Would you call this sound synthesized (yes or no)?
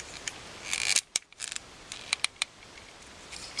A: yes